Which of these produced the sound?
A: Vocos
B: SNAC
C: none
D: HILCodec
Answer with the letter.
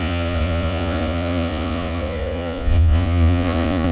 A